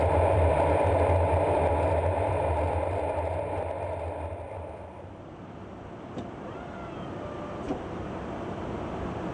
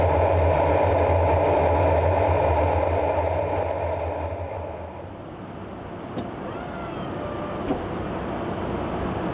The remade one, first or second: first